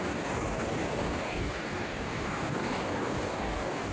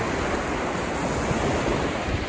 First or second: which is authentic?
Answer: second